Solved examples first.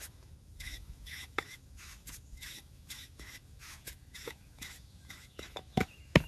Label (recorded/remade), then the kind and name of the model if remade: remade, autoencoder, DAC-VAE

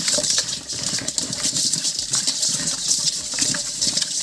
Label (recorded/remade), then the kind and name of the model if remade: remade, vocoder, BigVGAN v2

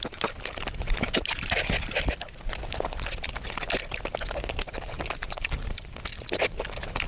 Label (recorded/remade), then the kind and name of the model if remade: recorded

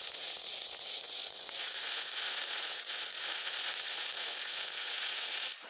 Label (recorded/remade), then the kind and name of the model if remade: remade, vocoder, Vocos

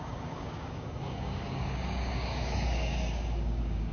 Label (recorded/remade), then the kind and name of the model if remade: remade, codec, DAC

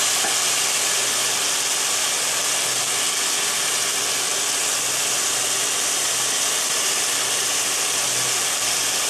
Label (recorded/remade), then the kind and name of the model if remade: recorded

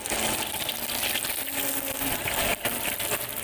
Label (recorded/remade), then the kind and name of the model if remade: recorded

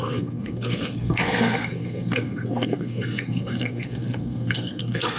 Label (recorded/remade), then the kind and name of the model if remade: remade, codec, SNAC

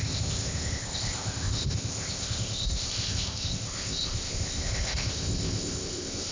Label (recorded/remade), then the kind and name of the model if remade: remade, codec, ZipCodec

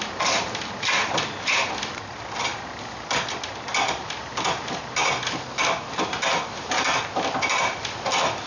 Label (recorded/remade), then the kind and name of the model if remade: recorded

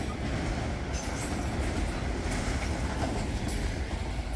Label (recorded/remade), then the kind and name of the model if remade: recorded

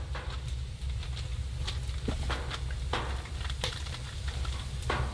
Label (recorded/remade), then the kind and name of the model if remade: recorded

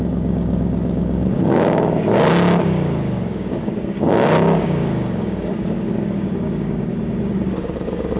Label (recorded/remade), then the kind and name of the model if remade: remade, codec, DAC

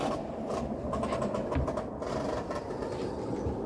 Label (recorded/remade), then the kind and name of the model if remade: recorded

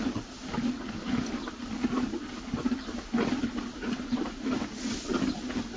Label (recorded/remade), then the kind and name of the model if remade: recorded